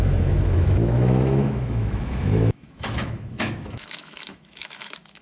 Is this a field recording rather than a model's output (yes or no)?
no